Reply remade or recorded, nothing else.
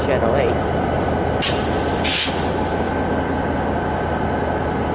recorded